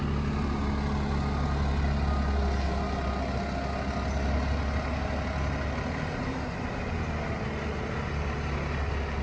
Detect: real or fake real